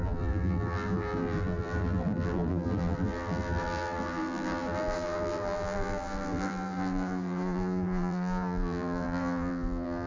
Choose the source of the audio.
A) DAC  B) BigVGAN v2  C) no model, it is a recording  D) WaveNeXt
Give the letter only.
B